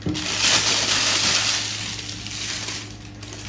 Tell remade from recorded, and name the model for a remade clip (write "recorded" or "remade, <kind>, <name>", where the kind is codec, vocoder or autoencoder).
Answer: recorded